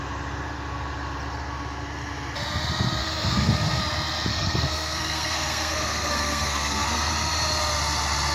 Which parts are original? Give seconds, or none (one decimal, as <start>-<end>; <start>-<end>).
0.0-3.0; 3.8-4.3; 7.1-8.3